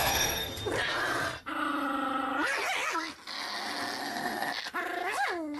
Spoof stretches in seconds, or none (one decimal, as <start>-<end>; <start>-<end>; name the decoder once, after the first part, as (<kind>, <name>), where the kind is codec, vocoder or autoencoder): 0.0-0.6 (codec, SNAC); 4.0-4.5